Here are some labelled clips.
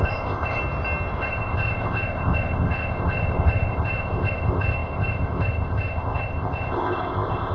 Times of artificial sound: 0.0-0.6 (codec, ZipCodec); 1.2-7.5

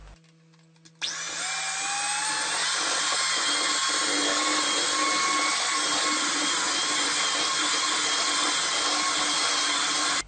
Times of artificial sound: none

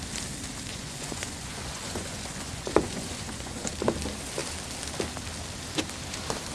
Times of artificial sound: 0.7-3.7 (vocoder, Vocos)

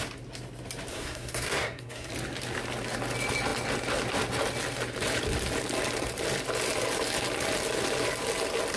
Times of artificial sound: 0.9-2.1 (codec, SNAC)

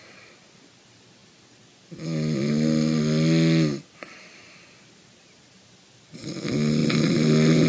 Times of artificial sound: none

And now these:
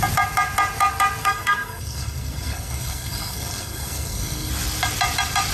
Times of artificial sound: 1.2-4.5 (codec, SNAC)

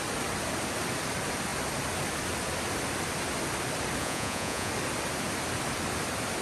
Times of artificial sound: 4.0-4.7 (vocoder, Vocos)

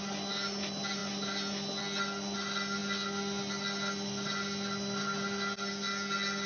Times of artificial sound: none